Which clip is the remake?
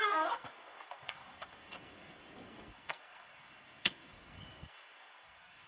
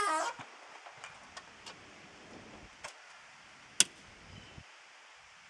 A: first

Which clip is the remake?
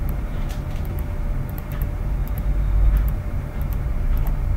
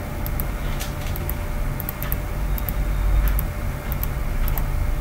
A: first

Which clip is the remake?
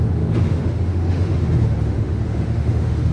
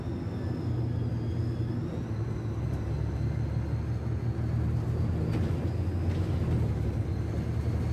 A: first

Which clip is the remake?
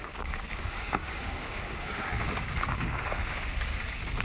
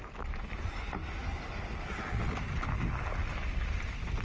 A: first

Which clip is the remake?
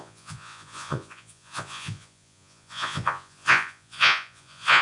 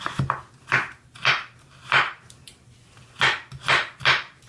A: first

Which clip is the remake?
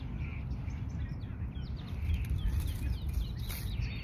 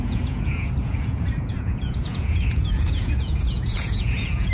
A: second